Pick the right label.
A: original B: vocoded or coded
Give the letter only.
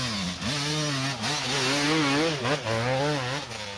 A